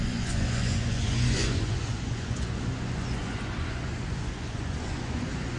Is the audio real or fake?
fake